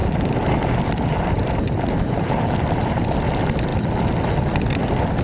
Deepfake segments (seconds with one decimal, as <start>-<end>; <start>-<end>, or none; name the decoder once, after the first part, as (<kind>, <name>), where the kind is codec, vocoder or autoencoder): 0.0-3.1 (vocoder, BigVGAN v2)